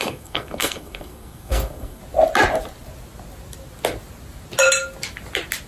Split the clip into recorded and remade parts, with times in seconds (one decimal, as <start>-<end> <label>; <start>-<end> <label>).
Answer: 0.0-2.0 remade; 2.0-5.7 recorded